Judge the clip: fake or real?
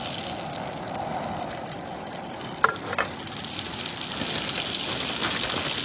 real